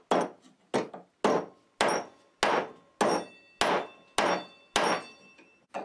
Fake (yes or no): no